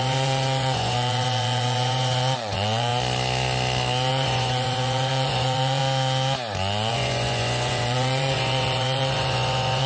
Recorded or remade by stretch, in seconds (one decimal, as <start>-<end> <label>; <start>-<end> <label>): 0.0-2.9 remade; 2.9-4.1 recorded; 4.1-5.8 remade; 5.8-6.9 recorded; 6.9-9.9 remade